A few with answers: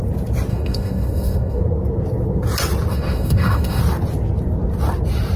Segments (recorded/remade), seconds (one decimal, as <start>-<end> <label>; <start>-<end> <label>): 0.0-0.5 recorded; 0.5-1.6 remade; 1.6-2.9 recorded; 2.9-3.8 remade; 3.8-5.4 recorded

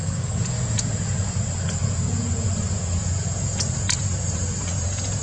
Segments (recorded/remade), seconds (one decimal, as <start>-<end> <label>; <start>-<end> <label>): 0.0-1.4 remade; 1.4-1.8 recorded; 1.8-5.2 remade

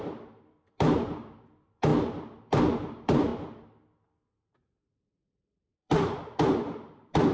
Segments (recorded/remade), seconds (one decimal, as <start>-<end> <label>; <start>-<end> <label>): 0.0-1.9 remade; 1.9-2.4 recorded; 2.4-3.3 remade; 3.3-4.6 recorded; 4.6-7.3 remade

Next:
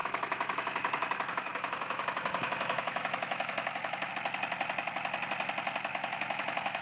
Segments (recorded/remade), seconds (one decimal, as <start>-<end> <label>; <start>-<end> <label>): 0.0-4.1 remade; 4.1-5.9 recorded; 5.9-6.8 remade

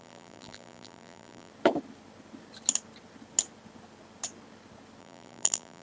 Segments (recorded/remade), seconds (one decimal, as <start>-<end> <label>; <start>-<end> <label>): 0.0-1.5 remade; 1.5-5.0 recorded; 5.0-5.8 remade